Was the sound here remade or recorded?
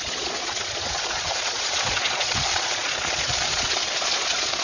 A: remade